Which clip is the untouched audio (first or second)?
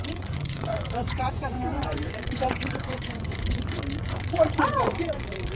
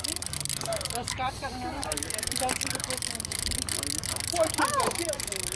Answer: second